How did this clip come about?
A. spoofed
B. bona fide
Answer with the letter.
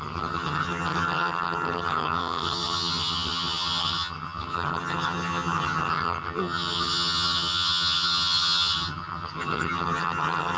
A